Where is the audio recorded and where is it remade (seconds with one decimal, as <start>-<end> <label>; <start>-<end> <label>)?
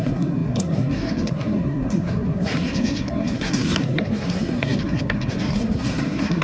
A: 0.0-6.4 remade